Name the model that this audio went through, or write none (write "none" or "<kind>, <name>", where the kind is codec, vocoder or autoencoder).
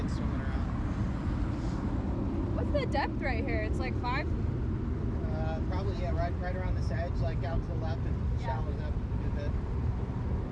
none